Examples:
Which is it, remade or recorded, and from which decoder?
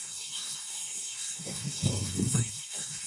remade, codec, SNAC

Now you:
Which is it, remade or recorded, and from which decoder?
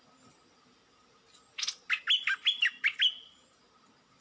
recorded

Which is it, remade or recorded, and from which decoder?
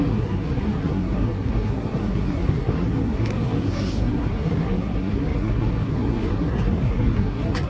remade, codec, SNAC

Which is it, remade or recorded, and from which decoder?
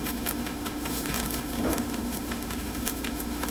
remade, autoencoder, DAC-VAE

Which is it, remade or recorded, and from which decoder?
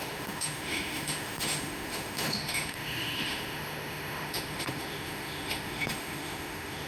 remade, autoencoder, DAC-VAE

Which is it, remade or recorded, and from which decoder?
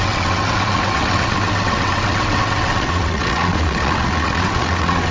remade, vocoder, WaveNeXt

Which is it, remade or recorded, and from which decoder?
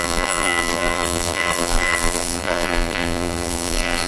remade, vocoder, BigVGAN v2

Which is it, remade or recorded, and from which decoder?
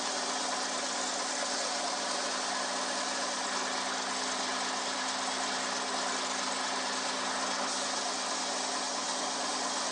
recorded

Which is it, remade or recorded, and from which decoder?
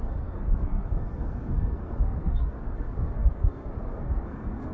remade, codec, SNAC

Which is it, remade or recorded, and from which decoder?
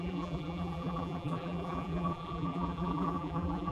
remade, vocoder, BigVGAN v2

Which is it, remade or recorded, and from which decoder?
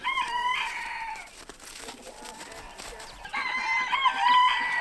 recorded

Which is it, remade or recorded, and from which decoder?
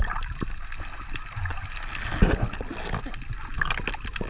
recorded